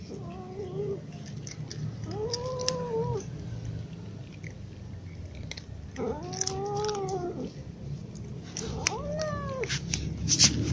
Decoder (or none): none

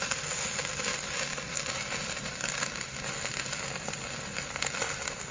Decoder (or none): none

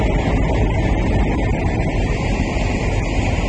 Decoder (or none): none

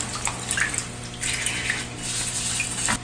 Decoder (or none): none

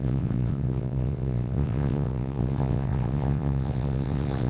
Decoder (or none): vocoder, WaveNeXt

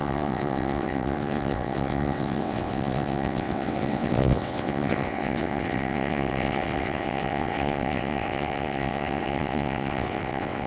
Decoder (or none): vocoder, WaveNeXt